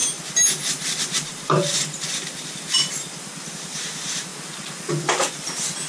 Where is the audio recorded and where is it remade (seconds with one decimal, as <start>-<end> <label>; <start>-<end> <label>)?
0.0-4.3 remade; 4.3-5.3 recorded; 5.3-5.9 remade